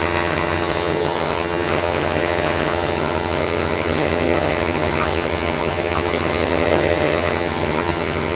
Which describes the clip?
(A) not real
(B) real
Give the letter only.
A